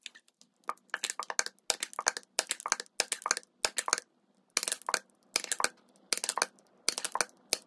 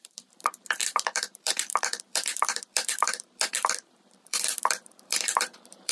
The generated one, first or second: second